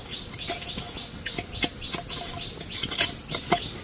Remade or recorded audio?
recorded